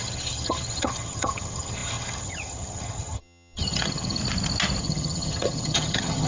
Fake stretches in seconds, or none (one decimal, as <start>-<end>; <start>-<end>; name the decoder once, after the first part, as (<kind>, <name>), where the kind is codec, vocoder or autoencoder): 0.0-4.2 (vocoder, HiFi-GAN); 4.8-6.3